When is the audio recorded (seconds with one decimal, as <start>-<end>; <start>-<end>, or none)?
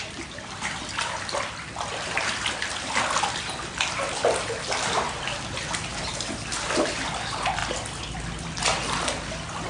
0.0-9.7